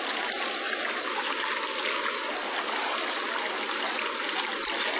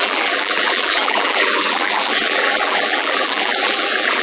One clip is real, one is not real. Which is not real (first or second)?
second